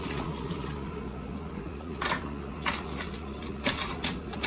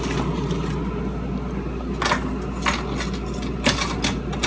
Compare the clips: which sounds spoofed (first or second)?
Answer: first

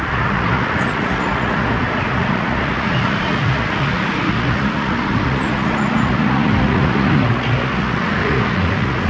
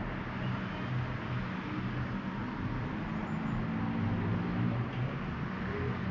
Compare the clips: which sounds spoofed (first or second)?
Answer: first